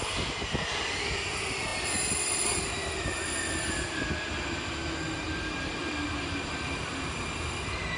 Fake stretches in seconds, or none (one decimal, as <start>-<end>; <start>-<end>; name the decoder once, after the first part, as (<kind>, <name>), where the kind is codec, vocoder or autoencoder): none